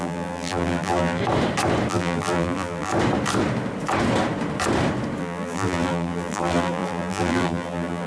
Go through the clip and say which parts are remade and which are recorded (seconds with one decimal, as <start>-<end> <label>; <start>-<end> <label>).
0.0-1.2 remade; 1.2-1.9 recorded; 1.9-2.9 remade; 2.9-5.2 recorded; 5.2-8.1 remade